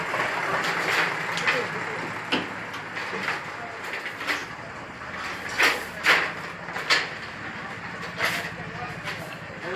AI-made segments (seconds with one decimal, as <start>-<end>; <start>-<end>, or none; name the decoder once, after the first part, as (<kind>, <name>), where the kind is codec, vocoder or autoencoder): none